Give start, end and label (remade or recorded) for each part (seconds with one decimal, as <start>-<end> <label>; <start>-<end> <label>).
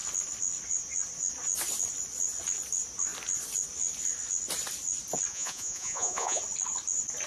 0.0-5.3 recorded; 5.3-6.4 remade; 6.4-7.3 recorded